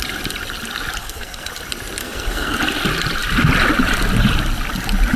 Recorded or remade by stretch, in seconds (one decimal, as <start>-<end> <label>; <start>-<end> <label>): 0.0-1.0 recorded; 1.0-1.5 remade; 1.5-2.0 recorded; 2.0-2.6 remade; 2.6-5.2 recorded